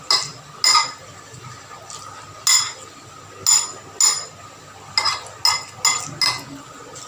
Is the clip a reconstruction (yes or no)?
no